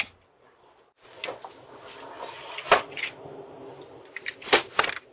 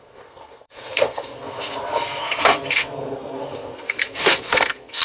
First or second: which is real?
first